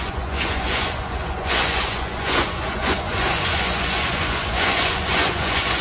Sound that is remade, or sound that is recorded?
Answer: remade